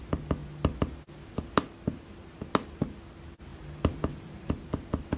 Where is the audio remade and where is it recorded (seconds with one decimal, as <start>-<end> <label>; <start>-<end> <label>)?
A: 0.0-3.5 recorded; 3.5-4.5 remade; 4.5-5.2 recorded